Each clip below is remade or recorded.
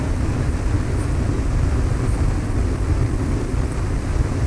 recorded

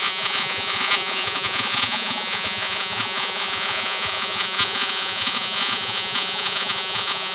remade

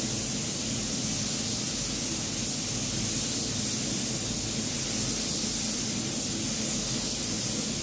recorded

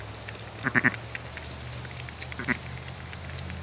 recorded